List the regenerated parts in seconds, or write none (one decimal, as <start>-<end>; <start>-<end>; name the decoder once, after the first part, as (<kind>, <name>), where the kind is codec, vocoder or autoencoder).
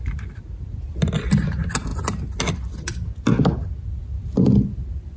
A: none